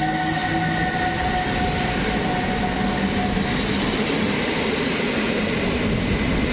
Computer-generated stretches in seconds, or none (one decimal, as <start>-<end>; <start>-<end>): none